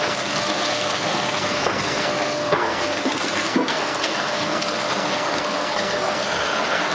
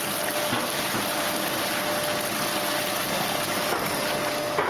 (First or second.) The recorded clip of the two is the second